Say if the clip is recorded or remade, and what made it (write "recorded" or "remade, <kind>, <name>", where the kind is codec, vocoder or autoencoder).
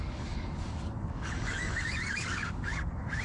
remade, codec, DAC